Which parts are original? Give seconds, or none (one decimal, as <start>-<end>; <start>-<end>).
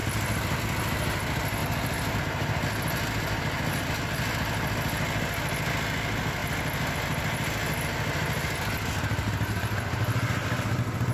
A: 0.0-11.1